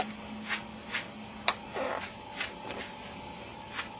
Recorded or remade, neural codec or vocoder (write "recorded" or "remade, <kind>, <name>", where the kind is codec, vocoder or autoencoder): recorded